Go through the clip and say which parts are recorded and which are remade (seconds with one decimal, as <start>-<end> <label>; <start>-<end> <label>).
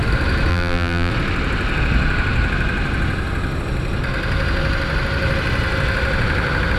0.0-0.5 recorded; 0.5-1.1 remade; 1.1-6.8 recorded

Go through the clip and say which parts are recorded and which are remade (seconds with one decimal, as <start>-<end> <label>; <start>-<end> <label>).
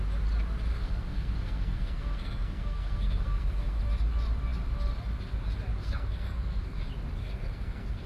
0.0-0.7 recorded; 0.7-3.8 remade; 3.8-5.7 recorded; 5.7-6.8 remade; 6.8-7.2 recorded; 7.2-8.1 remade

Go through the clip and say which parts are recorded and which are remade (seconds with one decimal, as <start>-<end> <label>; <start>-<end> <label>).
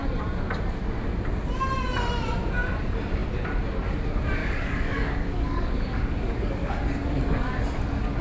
0.0-4.4 recorded; 4.4-7.5 remade; 7.5-8.2 recorded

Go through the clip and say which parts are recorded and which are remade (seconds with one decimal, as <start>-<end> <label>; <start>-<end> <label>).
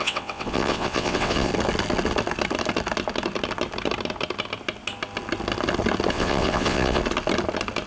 0.0-1.5 remade; 1.5-6.1 recorded; 6.1-7.0 remade; 7.0-7.9 recorded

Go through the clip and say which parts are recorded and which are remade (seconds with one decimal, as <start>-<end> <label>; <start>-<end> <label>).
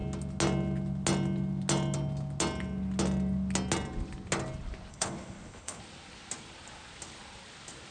0.0-4.9 recorded; 4.9-5.8 remade; 5.8-7.9 recorded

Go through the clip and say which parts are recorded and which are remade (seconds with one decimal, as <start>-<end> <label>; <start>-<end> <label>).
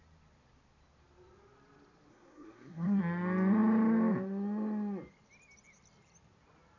0.0-2.1 recorded; 2.1-3.0 remade; 3.0-6.8 recorded